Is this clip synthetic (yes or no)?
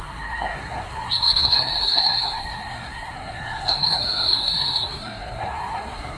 yes